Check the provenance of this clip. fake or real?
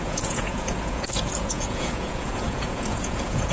fake